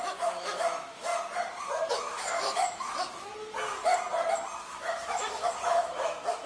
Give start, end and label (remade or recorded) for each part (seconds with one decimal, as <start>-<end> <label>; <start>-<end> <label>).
0.0-1.1 remade; 1.1-1.9 recorded; 1.9-3.3 remade; 3.3-4.6 recorded; 4.6-6.5 remade